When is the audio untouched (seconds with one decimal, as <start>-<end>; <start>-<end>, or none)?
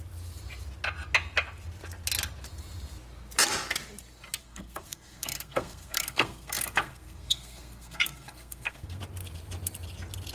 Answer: 0.0-4.4; 9.0-10.3